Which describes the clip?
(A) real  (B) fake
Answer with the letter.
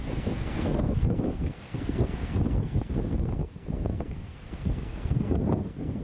B